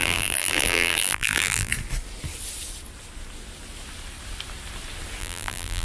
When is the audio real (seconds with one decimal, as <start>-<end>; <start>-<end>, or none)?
1.7-5.2